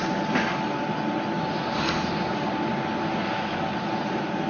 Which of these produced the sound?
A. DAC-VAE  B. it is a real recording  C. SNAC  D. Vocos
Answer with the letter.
B